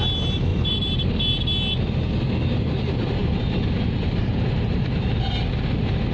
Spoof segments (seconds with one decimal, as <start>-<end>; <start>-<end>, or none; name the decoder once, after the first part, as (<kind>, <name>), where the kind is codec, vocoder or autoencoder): 0.5-1.1 (vocoder, BigVGAN v2); 3.2-5.3